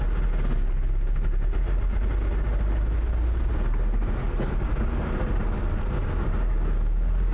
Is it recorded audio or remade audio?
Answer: recorded